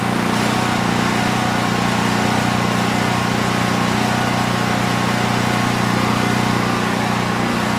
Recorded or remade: recorded